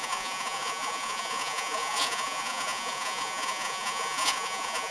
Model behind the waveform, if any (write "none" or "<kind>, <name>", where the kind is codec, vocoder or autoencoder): vocoder, Vocos